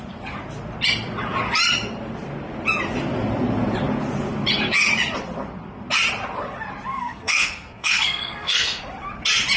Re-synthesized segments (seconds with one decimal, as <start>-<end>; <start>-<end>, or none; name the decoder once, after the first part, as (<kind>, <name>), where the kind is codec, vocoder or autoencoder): 6.9-8.8 (codec, SNAC)